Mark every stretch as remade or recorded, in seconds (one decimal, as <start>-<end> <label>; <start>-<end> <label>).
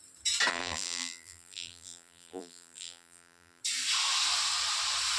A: 0.0-0.5 recorded; 0.5-3.6 remade; 3.6-5.2 recorded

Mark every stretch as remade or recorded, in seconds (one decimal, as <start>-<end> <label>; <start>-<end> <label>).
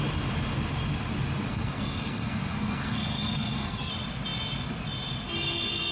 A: 0.0-1.5 recorded; 1.5-3.9 remade; 3.9-5.9 recorded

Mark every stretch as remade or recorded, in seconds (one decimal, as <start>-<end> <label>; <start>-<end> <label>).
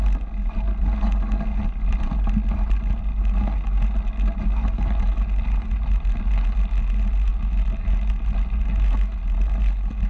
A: 0.0-10.1 recorded